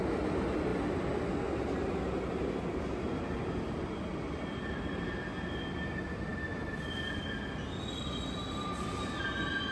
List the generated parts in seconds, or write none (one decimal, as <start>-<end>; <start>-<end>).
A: none